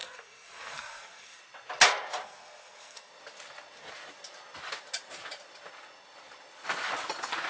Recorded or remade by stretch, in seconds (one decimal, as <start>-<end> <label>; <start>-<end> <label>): 0.0-1.4 remade; 1.4-2.2 recorded; 2.2-3.1 remade; 3.1-7.5 recorded